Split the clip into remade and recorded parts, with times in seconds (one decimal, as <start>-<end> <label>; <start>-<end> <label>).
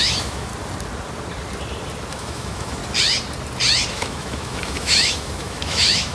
0.0-0.5 remade; 0.5-2.1 recorded; 2.1-2.8 remade; 2.8-3.9 recorded; 3.9-6.1 remade